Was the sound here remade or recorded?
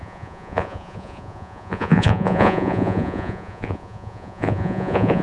remade